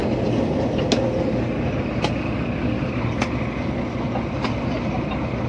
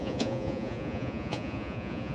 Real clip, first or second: first